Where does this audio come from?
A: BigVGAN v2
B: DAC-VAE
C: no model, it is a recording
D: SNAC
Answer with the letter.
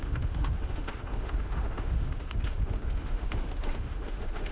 B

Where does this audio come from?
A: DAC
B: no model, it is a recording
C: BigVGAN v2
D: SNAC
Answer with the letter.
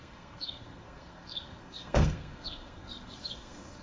D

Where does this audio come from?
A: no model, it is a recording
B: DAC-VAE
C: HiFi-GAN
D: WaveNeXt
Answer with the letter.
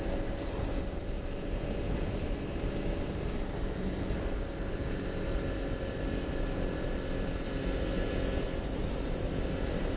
A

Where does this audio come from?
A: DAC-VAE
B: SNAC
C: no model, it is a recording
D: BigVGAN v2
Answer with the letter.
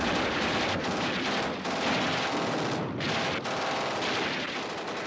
C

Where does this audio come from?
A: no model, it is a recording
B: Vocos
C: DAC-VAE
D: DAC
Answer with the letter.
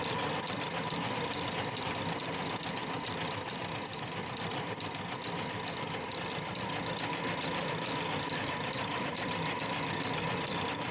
A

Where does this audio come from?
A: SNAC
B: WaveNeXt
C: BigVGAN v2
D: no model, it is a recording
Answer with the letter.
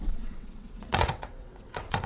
B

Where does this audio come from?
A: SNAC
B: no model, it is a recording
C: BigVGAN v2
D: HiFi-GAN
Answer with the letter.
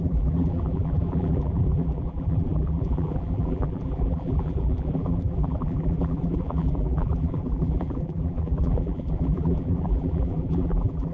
C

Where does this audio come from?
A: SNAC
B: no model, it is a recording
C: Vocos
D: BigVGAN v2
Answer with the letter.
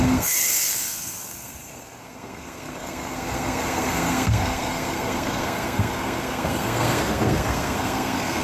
A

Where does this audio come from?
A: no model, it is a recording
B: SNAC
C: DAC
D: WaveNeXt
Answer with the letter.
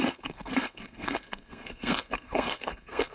B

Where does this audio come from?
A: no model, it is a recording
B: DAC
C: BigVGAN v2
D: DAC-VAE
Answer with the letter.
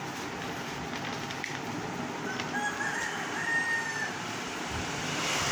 A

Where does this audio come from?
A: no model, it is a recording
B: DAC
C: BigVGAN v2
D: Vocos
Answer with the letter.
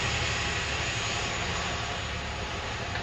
A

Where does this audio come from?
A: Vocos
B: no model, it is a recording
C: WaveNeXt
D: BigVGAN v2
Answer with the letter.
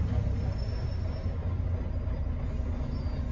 B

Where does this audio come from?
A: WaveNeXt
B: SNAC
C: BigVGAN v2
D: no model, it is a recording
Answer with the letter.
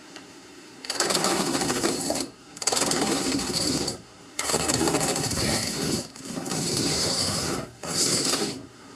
B